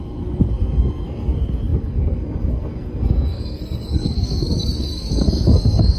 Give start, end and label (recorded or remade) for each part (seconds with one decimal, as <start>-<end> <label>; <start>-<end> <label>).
0.0-6.0 remade